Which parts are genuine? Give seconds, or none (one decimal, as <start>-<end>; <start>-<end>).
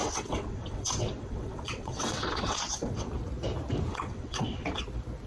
3.1-3.9; 4.8-5.3